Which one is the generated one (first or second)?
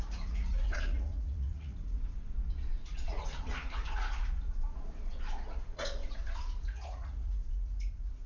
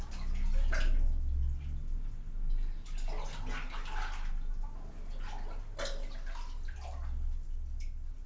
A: first